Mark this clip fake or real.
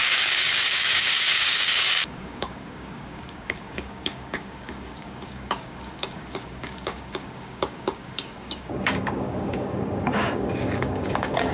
fake